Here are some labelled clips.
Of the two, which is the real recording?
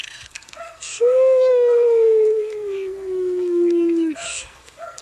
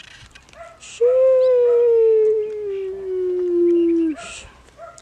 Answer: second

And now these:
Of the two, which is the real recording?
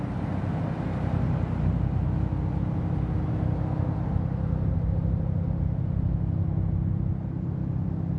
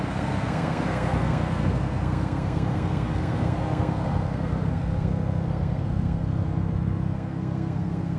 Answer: first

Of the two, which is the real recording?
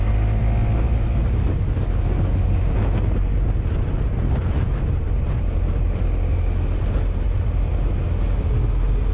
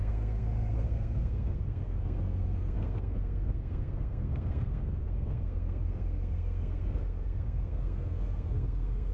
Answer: first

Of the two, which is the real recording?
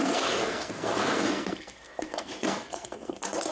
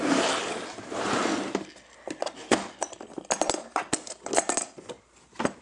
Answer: second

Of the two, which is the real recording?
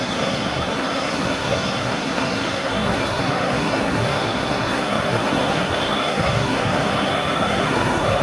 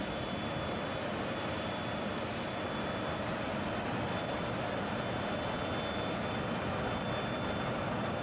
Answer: second